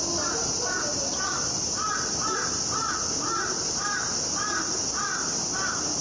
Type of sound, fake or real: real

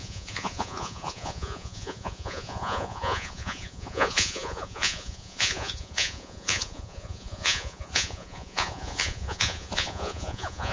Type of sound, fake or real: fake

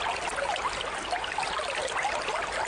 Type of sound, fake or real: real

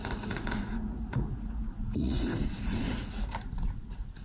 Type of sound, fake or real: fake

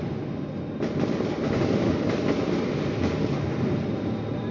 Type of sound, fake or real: real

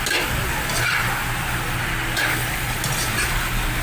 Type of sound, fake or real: real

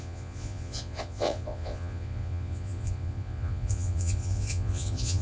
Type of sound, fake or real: fake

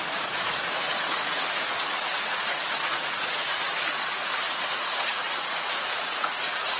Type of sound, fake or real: fake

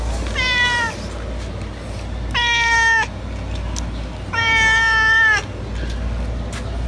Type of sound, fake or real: real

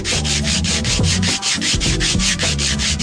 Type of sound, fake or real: fake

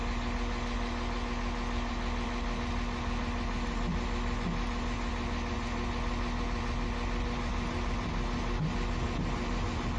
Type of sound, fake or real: real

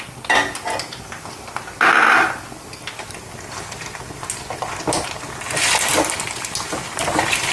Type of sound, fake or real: real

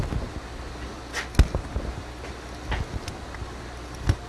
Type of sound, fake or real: real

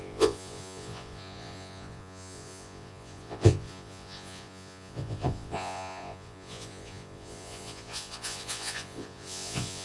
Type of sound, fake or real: fake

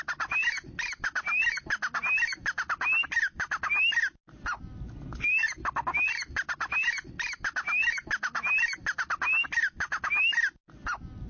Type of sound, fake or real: real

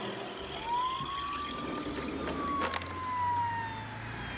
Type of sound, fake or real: real